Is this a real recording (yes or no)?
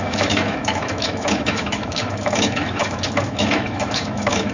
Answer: no